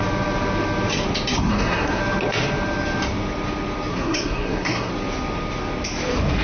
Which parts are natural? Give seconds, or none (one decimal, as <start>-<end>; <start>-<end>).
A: 0.0-1.5; 2.0-3.9; 4.9-6.4